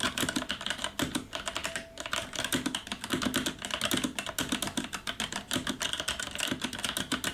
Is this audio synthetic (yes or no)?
no